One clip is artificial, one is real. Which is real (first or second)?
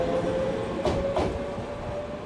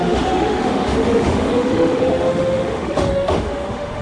first